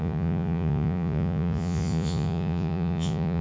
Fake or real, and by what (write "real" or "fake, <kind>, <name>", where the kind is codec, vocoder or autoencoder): fake, vocoder, Vocos